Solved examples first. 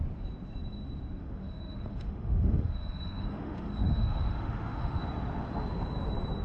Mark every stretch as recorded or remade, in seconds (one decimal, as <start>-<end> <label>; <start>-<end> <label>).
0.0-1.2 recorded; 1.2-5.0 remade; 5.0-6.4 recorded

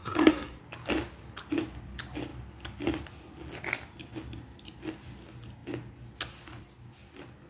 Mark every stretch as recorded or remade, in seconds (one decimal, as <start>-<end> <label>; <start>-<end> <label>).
0.0-0.6 remade; 0.6-7.5 recorded

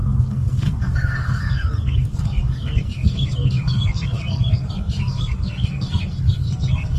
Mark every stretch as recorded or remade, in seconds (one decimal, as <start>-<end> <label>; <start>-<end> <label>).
0.0-7.0 remade

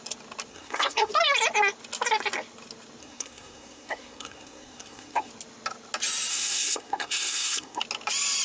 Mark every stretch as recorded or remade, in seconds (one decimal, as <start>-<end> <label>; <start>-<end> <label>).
0.0-0.5 recorded; 0.5-1.1 remade; 1.1-3.0 recorded; 3.0-5.3 remade; 5.3-6.3 recorded; 6.3-7.8 remade; 7.8-8.4 recorded

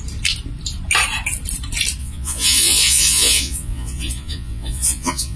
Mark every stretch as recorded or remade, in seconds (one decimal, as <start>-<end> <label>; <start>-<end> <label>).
0.0-2.0 recorded; 2.0-5.4 remade

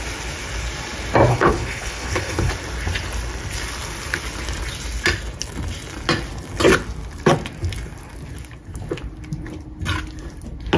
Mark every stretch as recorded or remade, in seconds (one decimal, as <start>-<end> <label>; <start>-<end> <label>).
0.0-1.3 recorded; 1.3-2.5 remade; 2.5-10.8 recorded